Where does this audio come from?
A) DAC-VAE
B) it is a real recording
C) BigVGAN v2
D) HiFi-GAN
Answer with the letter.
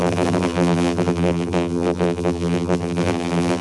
C